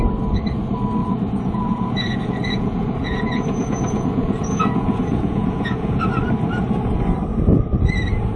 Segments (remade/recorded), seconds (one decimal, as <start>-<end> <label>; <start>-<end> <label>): 0.0-1.0 recorded; 1.0-6.0 remade; 6.0-8.4 recorded